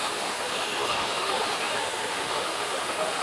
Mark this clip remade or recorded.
remade